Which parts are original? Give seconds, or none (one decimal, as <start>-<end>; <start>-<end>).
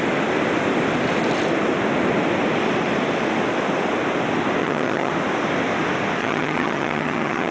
0.0-4.6; 5.1-6.2